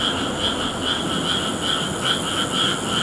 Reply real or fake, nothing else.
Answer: real